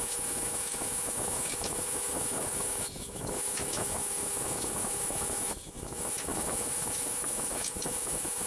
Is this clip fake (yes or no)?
yes